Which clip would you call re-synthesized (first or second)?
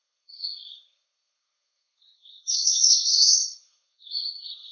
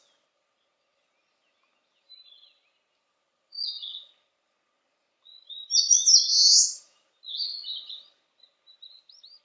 first